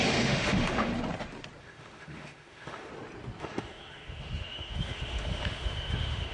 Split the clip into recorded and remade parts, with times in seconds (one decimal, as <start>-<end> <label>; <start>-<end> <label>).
0.0-0.9 remade; 0.9-1.6 recorded; 1.6-2.9 remade; 2.9-3.4 recorded; 3.4-6.3 remade